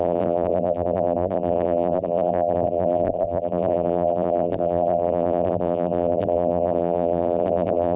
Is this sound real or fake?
fake